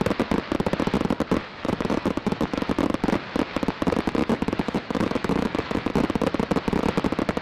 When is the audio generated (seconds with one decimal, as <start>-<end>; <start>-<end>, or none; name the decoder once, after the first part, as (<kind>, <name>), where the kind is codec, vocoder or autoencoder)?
1.4-2.7 (autoencoder, DAC-VAE); 4.2-5.9